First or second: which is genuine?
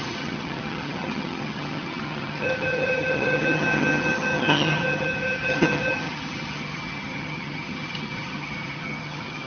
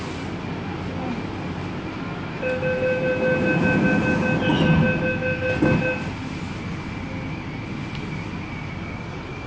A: second